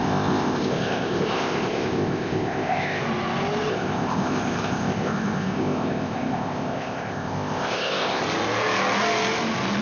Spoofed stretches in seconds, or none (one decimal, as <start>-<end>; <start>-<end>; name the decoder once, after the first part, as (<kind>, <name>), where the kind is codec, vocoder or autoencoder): 0.0-3.0 (codec, ZipCodec); 3.7-8.2